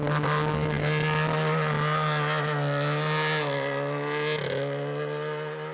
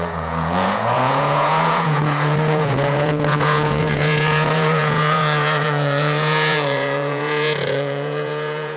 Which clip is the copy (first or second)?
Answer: second